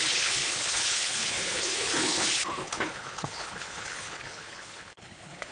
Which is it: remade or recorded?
remade